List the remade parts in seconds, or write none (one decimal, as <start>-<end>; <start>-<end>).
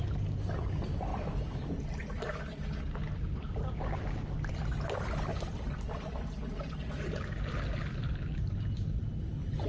1.1-4.5; 5.3-6.2